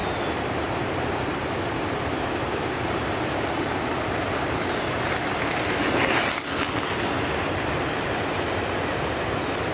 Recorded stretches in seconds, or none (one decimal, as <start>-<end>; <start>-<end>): 4.8-9.7